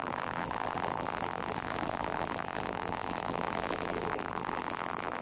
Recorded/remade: remade